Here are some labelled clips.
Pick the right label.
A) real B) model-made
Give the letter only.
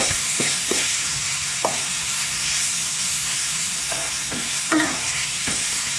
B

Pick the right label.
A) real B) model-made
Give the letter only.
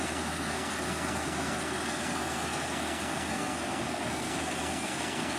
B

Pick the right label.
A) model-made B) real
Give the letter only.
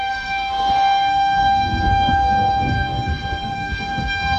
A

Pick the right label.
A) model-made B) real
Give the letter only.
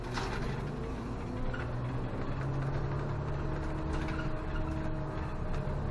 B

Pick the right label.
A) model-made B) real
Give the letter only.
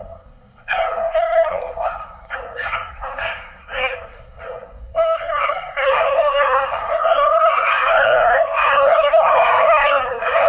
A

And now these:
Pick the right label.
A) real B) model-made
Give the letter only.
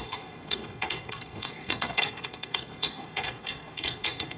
B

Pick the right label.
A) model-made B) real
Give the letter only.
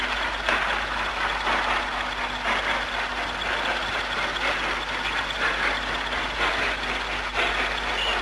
B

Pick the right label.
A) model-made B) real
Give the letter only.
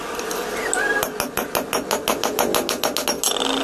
B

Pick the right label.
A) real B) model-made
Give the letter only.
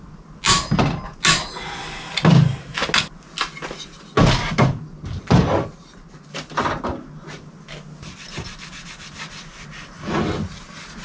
A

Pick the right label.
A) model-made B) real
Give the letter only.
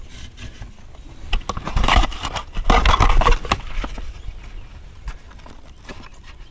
B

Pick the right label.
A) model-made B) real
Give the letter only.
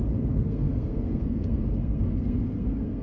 A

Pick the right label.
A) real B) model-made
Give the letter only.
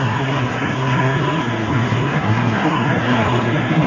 B